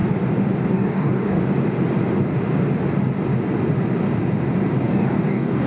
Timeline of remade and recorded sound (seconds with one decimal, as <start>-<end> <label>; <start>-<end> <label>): 0.0-0.7 recorded; 0.7-1.4 remade; 1.4-4.8 recorded; 4.8-5.7 remade